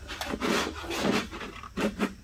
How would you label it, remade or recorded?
recorded